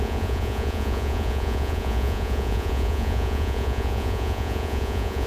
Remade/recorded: remade